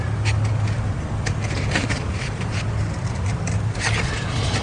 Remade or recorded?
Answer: recorded